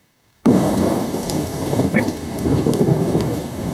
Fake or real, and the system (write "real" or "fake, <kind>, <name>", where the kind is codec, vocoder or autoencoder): fake, codec, DAC